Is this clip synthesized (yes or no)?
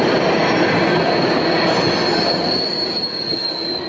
no